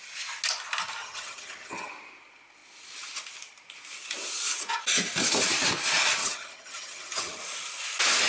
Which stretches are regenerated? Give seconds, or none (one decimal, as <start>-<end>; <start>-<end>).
1.0-1.9; 6.2-7.4